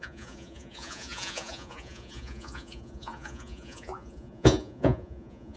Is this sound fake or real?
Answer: fake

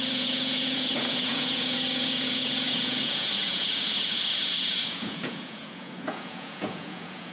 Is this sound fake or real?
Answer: fake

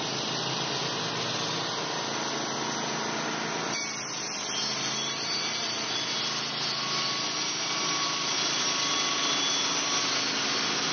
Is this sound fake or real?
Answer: real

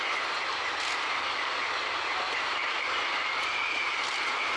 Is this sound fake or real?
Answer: real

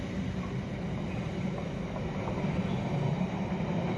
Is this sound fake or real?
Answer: real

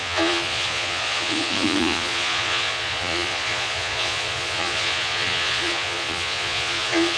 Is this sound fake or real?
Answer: fake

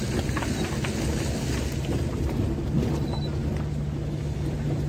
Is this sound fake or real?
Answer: real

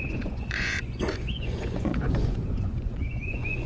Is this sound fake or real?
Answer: fake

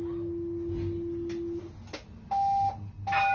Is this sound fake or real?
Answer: real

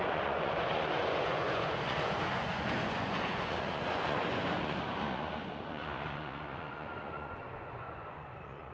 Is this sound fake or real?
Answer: fake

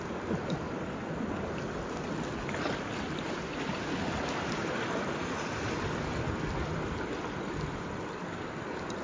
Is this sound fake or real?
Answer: real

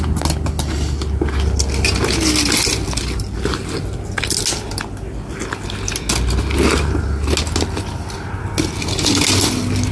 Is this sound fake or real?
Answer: real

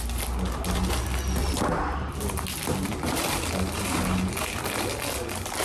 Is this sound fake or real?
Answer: real